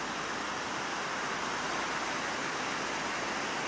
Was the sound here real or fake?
real